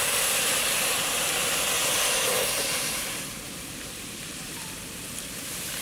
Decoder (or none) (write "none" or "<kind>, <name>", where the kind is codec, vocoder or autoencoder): vocoder, BigVGAN v2